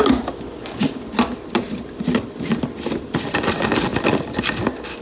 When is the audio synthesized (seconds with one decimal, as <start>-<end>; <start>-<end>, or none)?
none